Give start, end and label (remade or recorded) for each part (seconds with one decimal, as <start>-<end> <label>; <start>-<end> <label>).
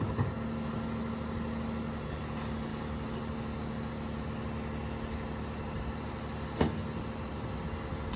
0.0-8.2 recorded